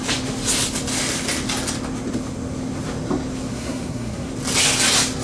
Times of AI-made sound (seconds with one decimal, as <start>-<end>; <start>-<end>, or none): 3.5-4.3